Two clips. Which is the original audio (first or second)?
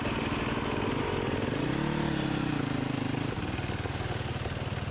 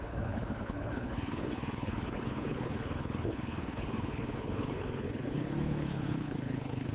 first